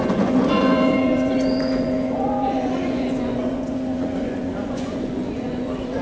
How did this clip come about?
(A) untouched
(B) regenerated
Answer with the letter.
B